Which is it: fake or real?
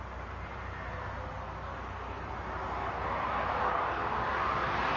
real